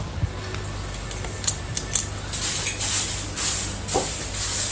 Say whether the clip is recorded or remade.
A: recorded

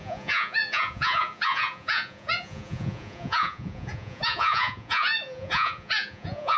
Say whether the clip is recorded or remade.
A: remade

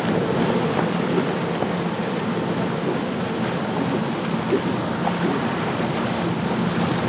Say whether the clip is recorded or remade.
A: recorded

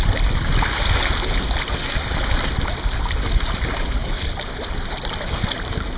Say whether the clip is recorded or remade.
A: recorded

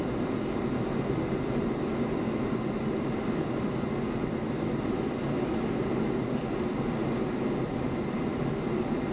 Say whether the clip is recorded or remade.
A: recorded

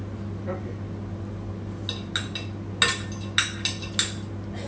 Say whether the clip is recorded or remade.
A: recorded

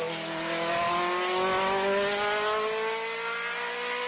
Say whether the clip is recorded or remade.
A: recorded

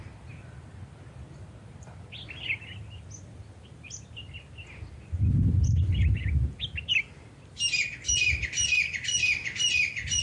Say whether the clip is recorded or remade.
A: recorded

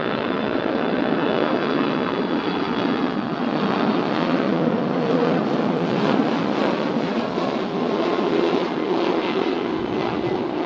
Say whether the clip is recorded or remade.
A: remade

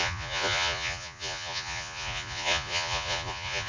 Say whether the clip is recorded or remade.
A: remade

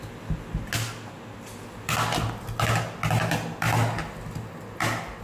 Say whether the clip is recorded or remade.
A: recorded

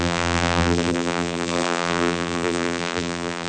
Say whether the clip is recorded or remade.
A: remade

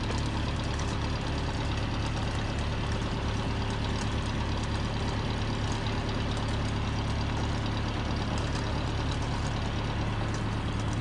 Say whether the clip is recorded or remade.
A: recorded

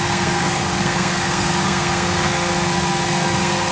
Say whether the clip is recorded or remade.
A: remade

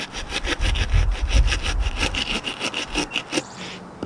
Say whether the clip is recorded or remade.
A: recorded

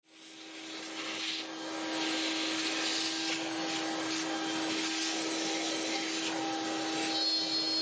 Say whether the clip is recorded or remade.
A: recorded